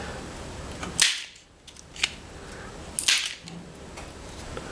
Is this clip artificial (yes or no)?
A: no